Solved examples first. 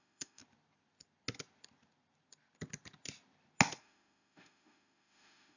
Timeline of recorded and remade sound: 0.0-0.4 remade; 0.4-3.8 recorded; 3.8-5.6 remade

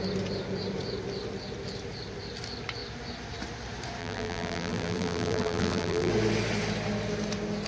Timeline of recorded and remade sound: 0.0-4.0 recorded; 4.0-6.1 remade; 6.1-7.7 recorded

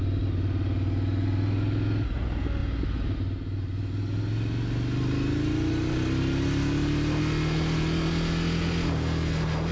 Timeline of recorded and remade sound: 0.0-9.7 recorded

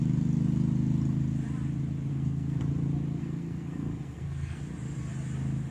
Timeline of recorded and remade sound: 0.0-2.1 recorded; 2.1-2.6 remade; 2.6-3.2 recorded; 3.2-4.6 remade; 4.6-5.7 recorded

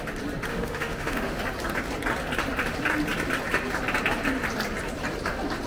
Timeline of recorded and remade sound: 0.0-0.5 recorded; 0.5-1.4 remade; 1.4-5.7 recorded

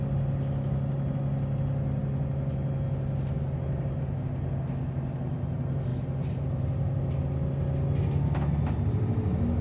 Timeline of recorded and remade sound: 0.0-9.6 recorded

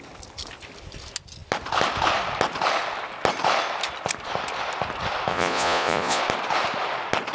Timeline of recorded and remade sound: 0.0-5.3 recorded; 5.3-6.2 remade; 6.2-7.3 recorded